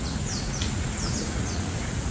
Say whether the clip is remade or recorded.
remade